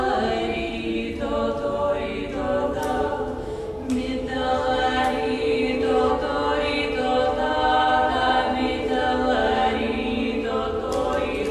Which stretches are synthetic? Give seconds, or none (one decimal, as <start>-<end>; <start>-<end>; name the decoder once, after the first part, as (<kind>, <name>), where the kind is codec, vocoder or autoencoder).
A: 3.1-6.1 (autoencoder, DAC-VAE); 9.4-10.5